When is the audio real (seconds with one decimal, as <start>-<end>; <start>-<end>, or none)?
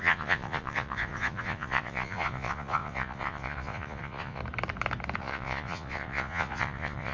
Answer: 4.4-5.2